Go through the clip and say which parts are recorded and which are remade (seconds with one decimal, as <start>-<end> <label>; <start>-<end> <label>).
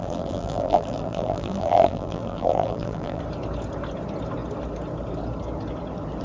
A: 0.0-3.2 remade; 3.2-6.2 recorded